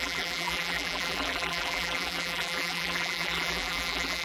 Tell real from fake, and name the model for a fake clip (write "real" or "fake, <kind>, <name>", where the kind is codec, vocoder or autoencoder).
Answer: fake, vocoder, BigVGAN v2